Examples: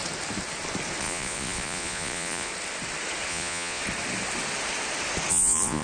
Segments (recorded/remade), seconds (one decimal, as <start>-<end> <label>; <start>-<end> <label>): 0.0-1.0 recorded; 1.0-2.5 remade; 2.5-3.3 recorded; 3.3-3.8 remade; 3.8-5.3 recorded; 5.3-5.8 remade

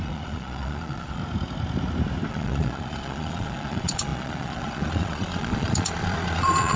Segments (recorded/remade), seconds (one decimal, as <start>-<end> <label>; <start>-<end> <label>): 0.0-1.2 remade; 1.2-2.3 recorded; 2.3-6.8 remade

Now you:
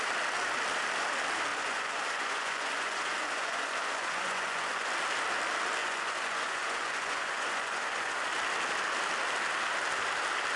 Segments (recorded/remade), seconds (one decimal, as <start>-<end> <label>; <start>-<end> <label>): 0.0-1.5 recorded; 1.5-4.9 remade; 4.9-5.8 recorded; 5.8-8.3 remade; 8.3-10.6 recorded

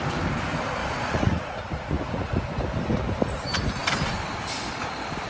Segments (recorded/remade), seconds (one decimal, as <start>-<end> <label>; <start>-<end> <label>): 0.0-0.8 recorded; 0.8-2.5 remade; 2.5-5.3 recorded

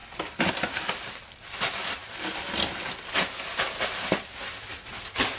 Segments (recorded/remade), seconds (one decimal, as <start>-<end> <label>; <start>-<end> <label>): 0.0-5.4 recorded

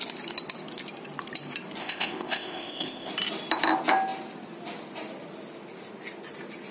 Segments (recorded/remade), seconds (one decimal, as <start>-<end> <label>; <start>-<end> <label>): 0.0-1.8 recorded; 1.8-3.1 remade; 3.1-6.7 recorded